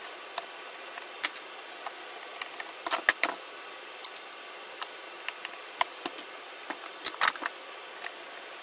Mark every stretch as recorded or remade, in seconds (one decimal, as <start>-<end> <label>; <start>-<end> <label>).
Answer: 0.0-8.6 recorded